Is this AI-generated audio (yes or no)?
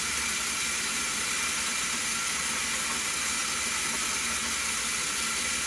no